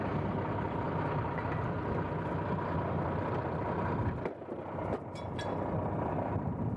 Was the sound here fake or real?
real